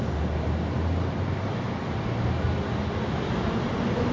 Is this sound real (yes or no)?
yes